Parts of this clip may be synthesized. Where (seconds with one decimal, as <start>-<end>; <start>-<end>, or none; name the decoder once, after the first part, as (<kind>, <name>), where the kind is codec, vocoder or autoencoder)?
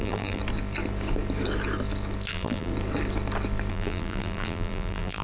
0.0-0.4 (vocoder, BigVGAN v2); 2.3-2.7; 3.7-5.2